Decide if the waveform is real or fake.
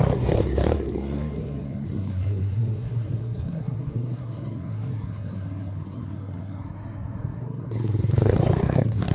fake